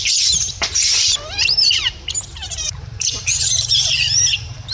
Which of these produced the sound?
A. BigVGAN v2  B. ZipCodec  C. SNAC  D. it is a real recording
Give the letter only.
A